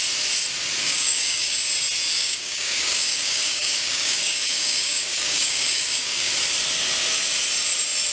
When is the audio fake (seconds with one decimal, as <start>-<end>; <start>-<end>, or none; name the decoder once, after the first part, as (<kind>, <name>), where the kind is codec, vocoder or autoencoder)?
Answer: 0.8-1.6 (codec, DAC); 2.1-6.3